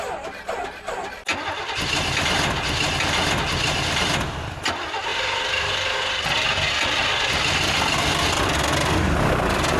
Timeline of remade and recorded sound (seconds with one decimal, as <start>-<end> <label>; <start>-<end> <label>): 0.0-9.8 recorded